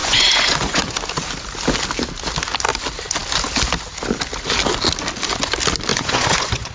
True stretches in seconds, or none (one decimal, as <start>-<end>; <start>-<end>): 1.0-5.9

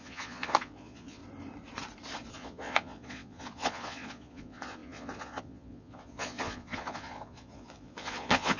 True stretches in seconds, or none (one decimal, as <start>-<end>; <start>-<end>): 1.2-2.3

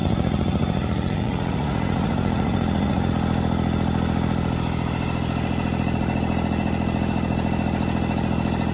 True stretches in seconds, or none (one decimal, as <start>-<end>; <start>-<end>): 3.1-8.7